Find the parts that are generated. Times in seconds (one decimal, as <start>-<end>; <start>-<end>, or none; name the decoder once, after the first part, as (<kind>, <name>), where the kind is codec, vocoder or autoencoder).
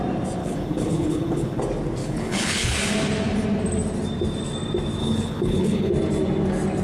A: 0.4-1.6 (codec, HILCodec); 2.0-2.8; 5.0-5.9